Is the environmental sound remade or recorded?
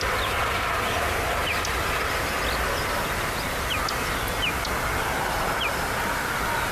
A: recorded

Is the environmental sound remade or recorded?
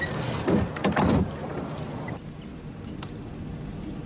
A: recorded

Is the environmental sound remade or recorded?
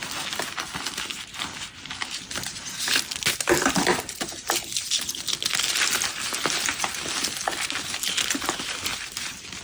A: recorded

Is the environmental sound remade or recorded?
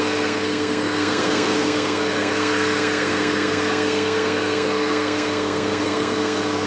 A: remade